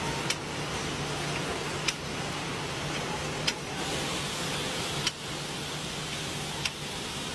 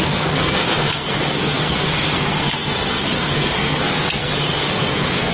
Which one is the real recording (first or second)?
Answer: first